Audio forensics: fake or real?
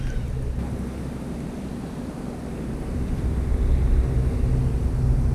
real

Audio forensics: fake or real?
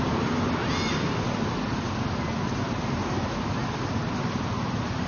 real